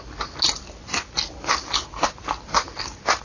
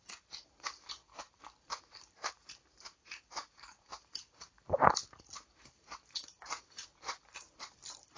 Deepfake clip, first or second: second